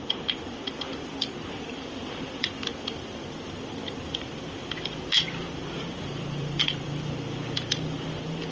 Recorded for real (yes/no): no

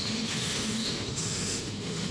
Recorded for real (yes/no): no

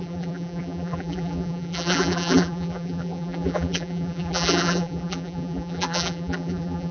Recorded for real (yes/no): no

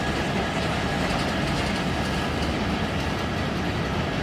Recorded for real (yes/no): yes